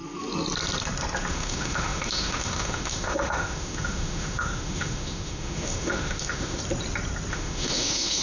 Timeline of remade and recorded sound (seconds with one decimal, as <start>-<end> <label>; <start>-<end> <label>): 0.0-1.3 recorded; 1.3-6.6 remade; 6.6-7.3 recorded; 7.3-8.2 remade